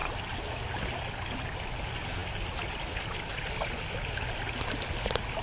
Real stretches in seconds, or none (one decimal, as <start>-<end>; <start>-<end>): 0.0-5.4